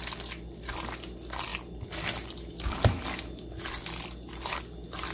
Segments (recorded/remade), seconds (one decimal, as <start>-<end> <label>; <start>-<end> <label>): 0.0-5.1 recorded